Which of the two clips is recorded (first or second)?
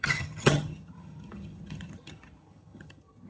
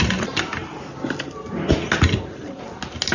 second